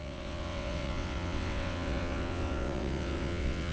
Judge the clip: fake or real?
fake